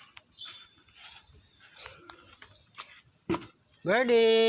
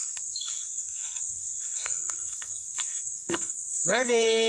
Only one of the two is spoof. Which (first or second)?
second